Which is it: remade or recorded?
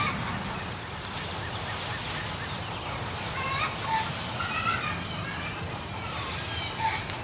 recorded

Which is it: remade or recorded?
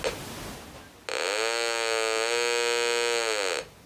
recorded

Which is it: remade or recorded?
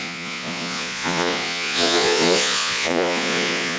remade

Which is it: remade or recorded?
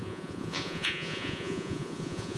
remade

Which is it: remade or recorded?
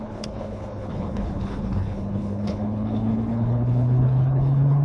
remade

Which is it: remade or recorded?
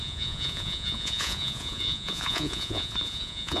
remade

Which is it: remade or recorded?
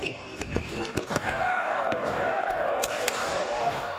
remade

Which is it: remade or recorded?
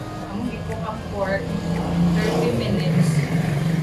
recorded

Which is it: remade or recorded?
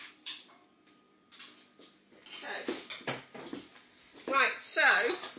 recorded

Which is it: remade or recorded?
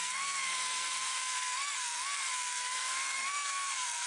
remade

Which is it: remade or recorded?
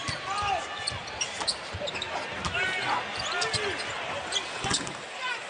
recorded